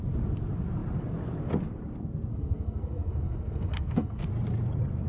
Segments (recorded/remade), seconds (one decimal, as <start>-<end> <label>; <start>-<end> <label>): 0.0-2.3 recorded; 2.3-4.2 remade; 4.2-5.1 recorded